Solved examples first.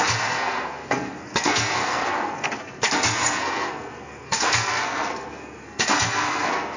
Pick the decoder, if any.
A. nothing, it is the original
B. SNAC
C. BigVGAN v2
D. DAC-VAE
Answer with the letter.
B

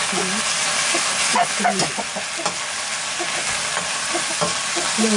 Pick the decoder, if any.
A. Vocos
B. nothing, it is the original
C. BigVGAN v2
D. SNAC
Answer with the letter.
B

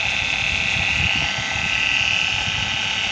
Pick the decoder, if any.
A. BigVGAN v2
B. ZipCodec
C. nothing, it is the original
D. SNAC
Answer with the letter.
C